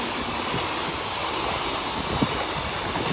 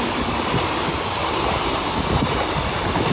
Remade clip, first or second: second